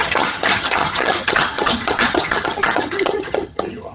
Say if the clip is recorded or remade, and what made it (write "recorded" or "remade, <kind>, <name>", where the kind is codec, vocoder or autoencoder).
remade, vocoder, HiFi-GAN